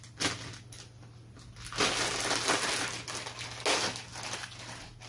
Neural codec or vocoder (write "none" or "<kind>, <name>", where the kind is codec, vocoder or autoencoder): none